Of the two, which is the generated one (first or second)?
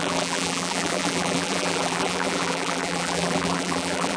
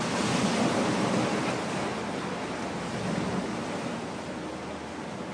first